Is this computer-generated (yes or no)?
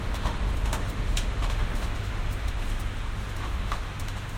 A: yes